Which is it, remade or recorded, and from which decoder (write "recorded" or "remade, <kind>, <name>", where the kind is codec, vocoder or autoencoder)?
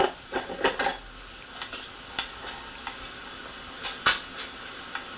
recorded